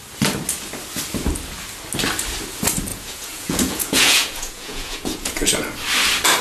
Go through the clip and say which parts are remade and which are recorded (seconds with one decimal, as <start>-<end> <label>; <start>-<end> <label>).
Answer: 0.0-2.9 recorded; 2.9-5.5 remade; 5.5-6.4 recorded